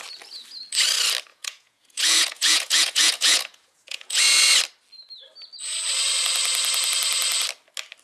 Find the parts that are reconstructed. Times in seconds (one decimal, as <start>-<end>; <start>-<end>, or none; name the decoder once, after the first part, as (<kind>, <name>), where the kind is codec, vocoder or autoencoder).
1.3-4.2 (vocoder, Vocos)